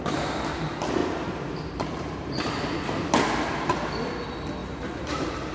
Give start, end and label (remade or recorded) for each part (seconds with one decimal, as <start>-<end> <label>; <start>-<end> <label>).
0.0-1.0 recorded; 1.0-2.5 remade; 2.5-4.6 recorded; 4.6-5.5 remade